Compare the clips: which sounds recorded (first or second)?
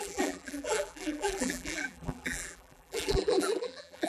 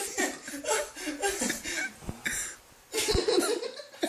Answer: second